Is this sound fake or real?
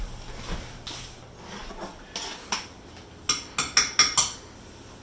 real